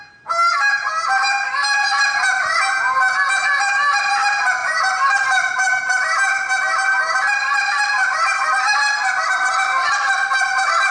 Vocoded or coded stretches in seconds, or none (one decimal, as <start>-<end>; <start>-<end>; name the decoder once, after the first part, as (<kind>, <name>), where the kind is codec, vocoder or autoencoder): 4.6-6.5 (vocoder, BigVGAN v2)